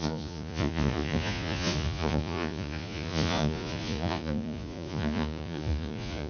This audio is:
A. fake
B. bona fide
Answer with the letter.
A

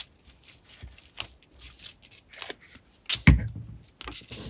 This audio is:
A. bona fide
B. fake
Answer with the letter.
A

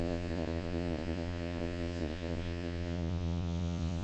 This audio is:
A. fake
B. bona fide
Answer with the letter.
A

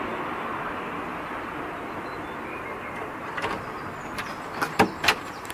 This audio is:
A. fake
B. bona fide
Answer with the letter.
B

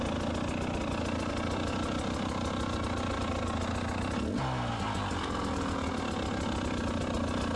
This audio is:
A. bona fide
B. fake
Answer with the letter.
A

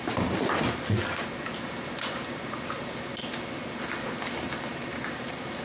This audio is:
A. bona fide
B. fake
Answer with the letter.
A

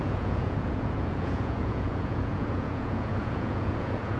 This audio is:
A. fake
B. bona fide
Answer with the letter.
A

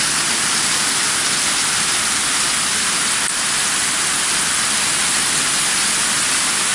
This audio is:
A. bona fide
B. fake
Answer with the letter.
A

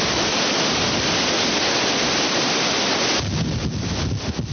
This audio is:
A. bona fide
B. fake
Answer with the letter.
A